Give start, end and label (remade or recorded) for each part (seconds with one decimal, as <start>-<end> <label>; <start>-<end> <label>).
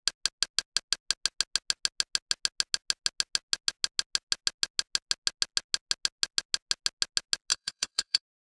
0.0-7.5 recorded; 7.5-8.2 remade; 8.2-8.6 recorded